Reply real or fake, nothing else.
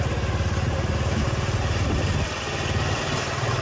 real